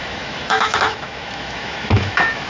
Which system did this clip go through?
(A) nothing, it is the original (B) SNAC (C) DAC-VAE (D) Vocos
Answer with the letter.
C